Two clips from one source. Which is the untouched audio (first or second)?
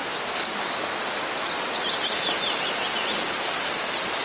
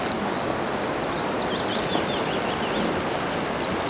second